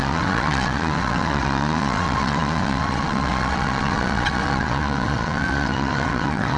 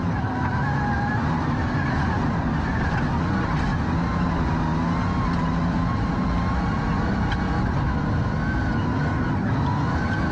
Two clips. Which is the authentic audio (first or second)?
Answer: second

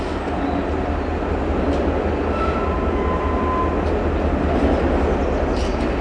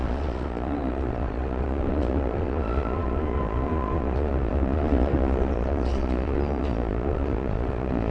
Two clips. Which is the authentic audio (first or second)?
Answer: first